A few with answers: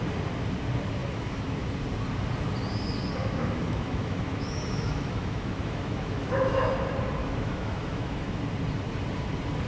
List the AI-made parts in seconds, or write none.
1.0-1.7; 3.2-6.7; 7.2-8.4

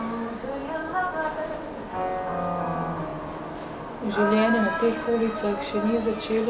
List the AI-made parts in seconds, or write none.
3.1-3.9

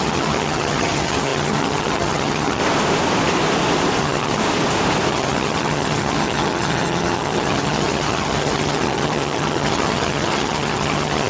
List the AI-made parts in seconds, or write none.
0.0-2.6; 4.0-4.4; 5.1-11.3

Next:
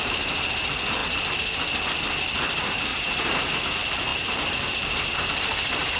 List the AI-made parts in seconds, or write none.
2.9-3.6

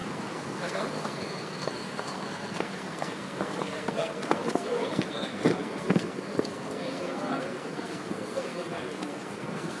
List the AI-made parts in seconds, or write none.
0.0-9.8

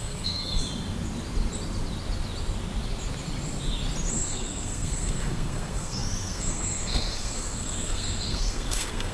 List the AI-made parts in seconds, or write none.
0.0-0.6; 4.1-9.1